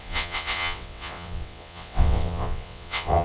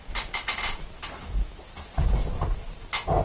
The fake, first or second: first